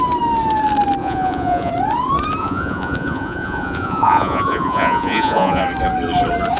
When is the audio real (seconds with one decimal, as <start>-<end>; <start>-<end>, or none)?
0.0-1.0; 1.7-2.4; 5.6-6.6